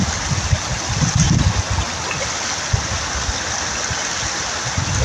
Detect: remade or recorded recorded